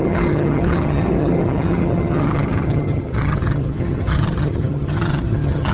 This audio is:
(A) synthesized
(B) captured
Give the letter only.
A